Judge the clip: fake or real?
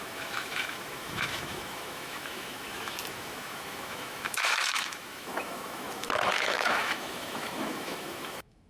fake